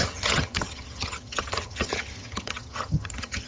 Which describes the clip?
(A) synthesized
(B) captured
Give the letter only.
A